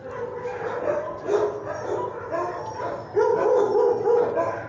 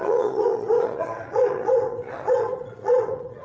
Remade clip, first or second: second